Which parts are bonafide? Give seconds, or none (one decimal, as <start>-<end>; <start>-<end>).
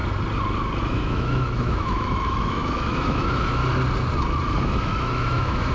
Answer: 0.0-0.8; 3.6-4.6